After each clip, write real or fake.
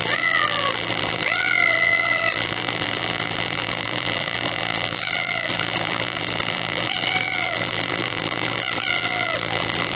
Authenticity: fake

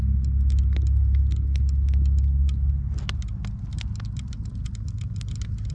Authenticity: real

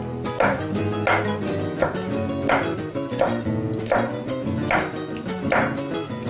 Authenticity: real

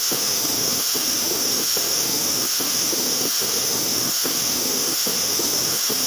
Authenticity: fake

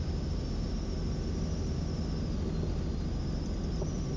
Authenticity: real